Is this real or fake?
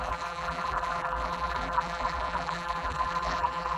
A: fake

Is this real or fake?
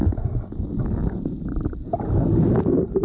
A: real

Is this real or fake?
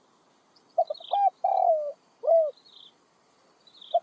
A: real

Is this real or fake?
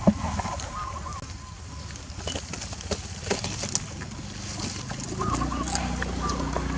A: real